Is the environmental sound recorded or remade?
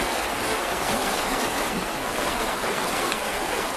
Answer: remade